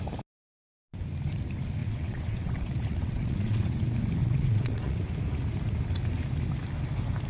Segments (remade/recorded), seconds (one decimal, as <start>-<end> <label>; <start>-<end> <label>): 0.0-1.8 recorded; 1.8-3.8 remade; 3.8-4.2 recorded; 4.2-5.1 remade; 5.1-7.3 recorded